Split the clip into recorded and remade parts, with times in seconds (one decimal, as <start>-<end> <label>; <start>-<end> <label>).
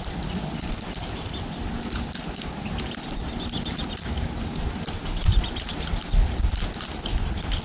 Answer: 0.0-7.6 recorded